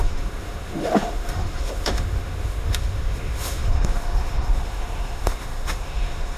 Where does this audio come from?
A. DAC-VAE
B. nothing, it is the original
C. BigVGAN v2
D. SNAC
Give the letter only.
A